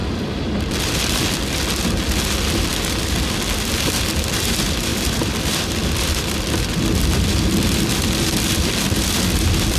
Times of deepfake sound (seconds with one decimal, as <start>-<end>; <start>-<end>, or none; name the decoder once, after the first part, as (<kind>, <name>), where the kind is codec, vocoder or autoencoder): 4.9-9.8 (vocoder, BigVGAN v2)